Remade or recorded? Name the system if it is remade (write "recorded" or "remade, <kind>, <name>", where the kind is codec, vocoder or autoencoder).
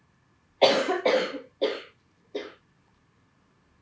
recorded